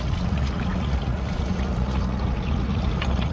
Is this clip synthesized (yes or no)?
yes